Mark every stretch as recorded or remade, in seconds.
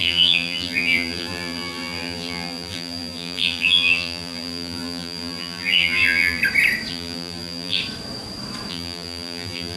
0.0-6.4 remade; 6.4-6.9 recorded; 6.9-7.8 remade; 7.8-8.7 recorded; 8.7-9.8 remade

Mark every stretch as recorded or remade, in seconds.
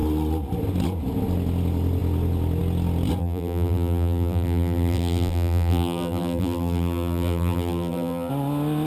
0.0-3.2 recorded; 3.2-8.3 remade; 8.3-8.9 recorded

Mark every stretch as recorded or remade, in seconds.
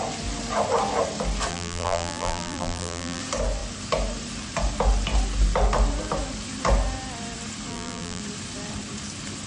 0.0-1.5 recorded; 1.5-3.2 remade; 3.2-7.7 recorded; 7.7-8.2 remade; 8.2-9.5 recorded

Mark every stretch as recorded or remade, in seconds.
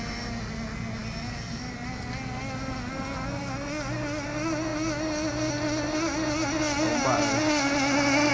0.0-8.3 recorded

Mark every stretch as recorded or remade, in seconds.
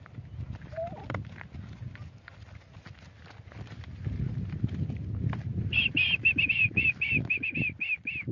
0.0-5.5 recorded; 5.5-6.9 remade; 6.9-8.3 recorded